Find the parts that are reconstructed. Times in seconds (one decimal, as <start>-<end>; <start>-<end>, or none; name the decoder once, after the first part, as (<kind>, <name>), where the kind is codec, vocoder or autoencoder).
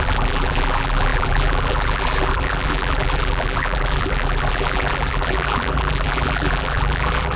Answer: 0.0-7.4 (vocoder, BigVGAN v2)